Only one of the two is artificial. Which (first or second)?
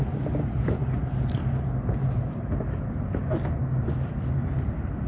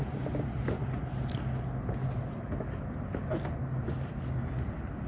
first